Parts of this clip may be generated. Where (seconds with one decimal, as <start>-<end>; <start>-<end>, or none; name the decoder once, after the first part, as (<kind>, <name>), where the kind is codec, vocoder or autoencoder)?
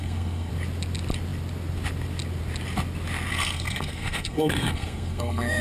0.0-0.5 (codec, SNAC); 3.3-5.6